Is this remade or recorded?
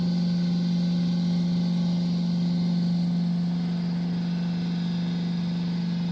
recorded